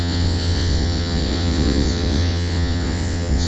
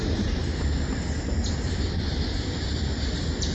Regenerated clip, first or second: first